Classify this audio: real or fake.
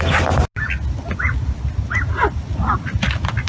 real